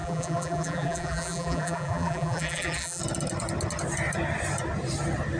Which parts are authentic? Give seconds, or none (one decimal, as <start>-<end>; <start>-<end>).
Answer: 3.0-5.4